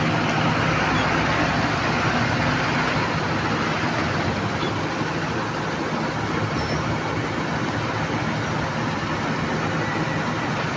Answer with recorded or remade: recorded